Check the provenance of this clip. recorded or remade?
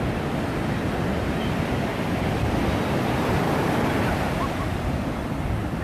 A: recorded